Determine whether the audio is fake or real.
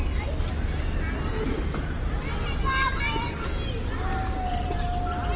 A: real